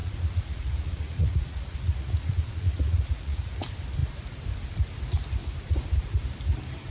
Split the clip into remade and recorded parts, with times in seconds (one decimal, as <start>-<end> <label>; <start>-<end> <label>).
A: 0.0-3.5 remade; 3.5-6.9 recorded